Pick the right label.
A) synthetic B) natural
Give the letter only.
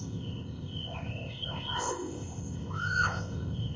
A